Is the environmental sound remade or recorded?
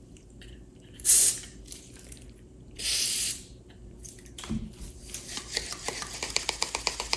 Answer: remade